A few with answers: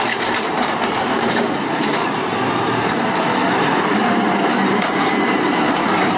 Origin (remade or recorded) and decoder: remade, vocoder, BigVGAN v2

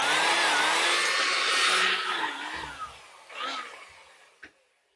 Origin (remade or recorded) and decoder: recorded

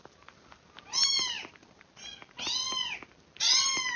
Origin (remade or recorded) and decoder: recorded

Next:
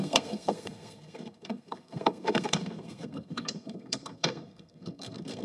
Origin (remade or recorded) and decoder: remade, codec, SNAC